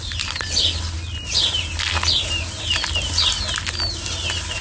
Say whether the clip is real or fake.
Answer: real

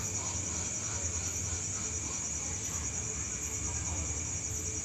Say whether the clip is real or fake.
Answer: real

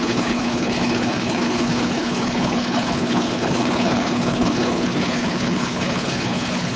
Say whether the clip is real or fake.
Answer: fake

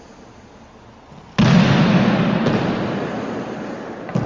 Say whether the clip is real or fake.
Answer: real